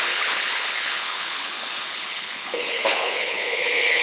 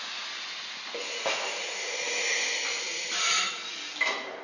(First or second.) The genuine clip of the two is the second